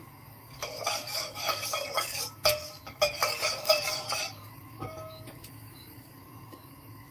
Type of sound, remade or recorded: remade